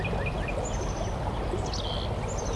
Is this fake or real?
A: real